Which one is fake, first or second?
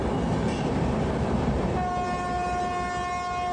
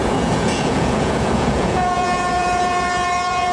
second